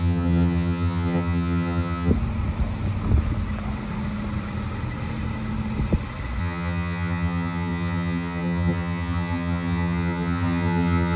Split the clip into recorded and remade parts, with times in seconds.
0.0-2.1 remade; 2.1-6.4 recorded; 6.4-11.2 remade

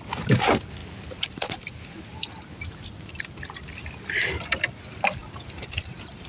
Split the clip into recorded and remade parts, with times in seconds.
0.0-6.3 recorded

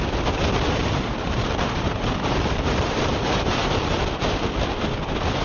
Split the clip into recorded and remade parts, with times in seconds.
0.0-0.8 recorded; 0.8-4.0 remade; 4.0-5.4 recorded

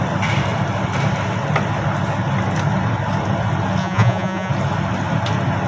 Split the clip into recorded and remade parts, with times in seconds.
0.0-3.8 recorded; 3.8-4.5 remade; 4.5-5.7 recorded

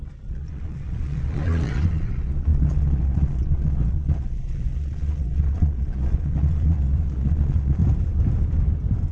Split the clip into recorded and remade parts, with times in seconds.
0.0-7.8 remade; 7.8-9.1 recorded